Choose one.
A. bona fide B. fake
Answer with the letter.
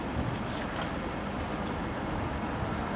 A